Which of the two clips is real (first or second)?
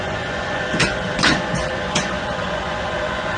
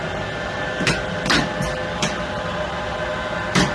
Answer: second